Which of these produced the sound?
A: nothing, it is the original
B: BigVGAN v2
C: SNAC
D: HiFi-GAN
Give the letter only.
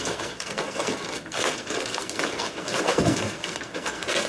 C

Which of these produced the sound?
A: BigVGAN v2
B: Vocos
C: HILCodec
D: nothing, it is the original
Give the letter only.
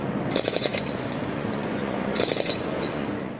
B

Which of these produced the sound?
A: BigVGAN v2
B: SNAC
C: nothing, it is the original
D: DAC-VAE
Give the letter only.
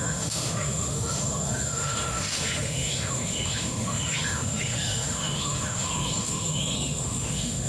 D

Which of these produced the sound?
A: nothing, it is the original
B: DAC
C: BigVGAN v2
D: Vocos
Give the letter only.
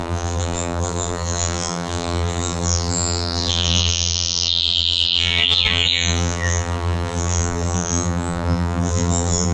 C